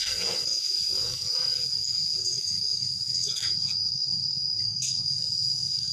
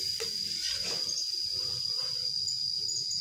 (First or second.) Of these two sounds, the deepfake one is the first